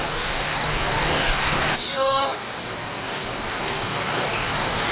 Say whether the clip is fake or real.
fake